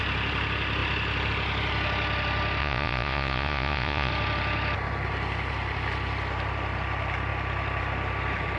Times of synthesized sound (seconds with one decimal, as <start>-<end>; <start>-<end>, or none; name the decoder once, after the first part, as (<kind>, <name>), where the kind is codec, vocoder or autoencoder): 2.6-4.1 (vocoder, Vocos)